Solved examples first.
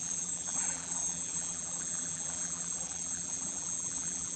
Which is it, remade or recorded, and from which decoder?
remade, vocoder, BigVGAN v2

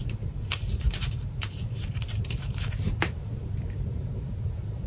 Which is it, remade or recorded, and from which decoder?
remade, vocoder, BigVGAN v2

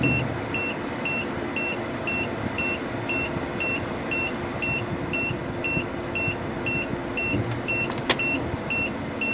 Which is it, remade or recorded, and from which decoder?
recorded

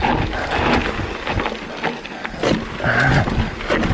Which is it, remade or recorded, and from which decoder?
recorded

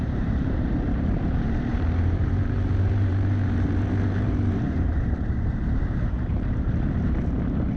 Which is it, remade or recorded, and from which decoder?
remade, vocoder, BigVGAN v2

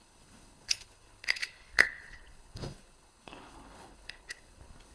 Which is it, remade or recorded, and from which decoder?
remade, codec, HILCodec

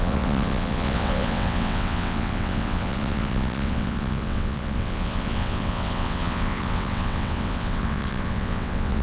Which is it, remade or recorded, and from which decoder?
remade, vocoder, WaveNeXt